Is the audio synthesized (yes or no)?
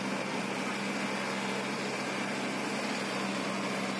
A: no